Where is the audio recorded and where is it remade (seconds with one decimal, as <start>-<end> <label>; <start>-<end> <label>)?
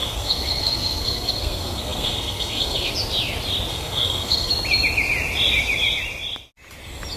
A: 0.0-2.9 remade; 2.9-3.7 recorded; 3.7-4.5 remade; 4.5-7.2 recorded